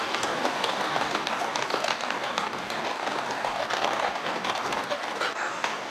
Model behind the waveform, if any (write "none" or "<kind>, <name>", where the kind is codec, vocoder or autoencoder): codec, DAC